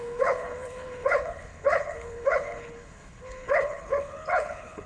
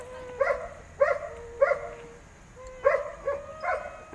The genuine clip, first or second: second